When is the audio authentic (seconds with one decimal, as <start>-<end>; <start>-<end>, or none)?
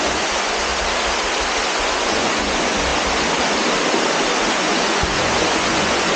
0.7-1.6; 2.9-4.5